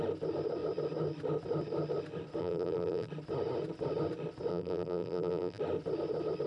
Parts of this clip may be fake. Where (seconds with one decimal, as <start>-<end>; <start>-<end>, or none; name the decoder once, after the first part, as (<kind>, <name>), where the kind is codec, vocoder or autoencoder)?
2.4-3.1 (vocoder, BigVGAN v2); 4.5-5.6